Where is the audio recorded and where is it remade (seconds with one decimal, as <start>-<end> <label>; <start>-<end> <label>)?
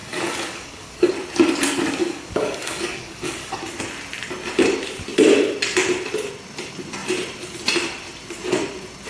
0.0-1.1 remade; 1.1-2.0 recorded; 2.0-3.6 remade; 3.6-9.1 recorded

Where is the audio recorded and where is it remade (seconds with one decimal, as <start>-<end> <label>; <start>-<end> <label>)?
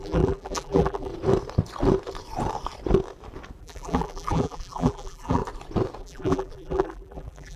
0.0-1.1 remade; 1.1-3.6 recorded; 3.6-5.4 remade; 5.4-6.0 recorded; 6.0-7.6 remade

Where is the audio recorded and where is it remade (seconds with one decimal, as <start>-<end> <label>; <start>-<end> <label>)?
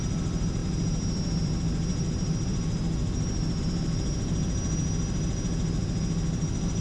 0.0-6.8 recorded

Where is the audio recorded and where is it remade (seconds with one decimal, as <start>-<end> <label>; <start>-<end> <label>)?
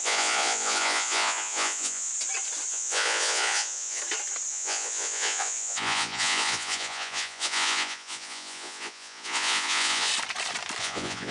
0.0-2.1 remade; 2.1-2.7 recorded; 2.7-4.0 remade; 4.0-4.5 recorded; 4.5-10.1 remade; 10.1-10.8 recorded; 10.8-11.3 remade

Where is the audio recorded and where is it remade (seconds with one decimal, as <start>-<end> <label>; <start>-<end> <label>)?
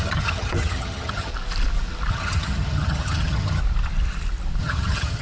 0.0-1.3 remade; 1.3-2.1 recorded; 2.1-3.6 remade; 3.6-4.6 recorded; 4.6-5.2 remade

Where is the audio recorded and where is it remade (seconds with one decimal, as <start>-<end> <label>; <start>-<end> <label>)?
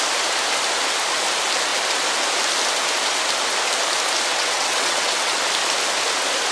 0.0-4.3 recorded; 4.3-5.3 remade; 5.3-6.5 recorded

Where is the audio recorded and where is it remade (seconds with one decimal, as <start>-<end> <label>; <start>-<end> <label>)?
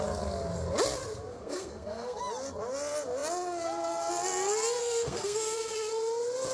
0.0-1.3 recorded; 1.3-2.2 remade; 2.2-4.8 recorded; 4.8-5.9 remade; 5.9-6.5 recorded